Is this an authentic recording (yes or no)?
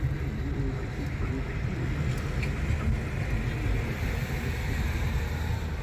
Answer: yes